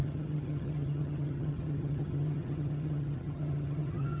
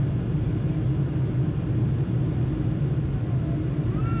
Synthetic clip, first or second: first